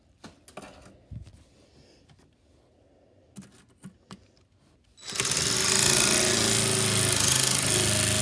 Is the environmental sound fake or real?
real